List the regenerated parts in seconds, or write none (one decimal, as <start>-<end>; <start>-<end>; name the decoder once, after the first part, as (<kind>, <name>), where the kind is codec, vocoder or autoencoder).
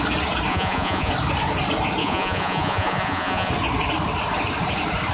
0.5-1.1 (vocoder, Vocos); 2.0-3.5